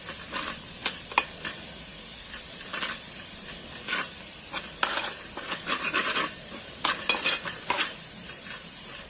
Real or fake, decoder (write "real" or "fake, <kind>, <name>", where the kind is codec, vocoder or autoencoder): real